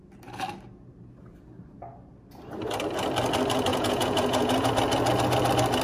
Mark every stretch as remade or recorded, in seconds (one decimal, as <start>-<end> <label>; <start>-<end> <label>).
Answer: 0.0-3.7 recorded; 3.7-4.7 remade; 4.7-5.8 recorded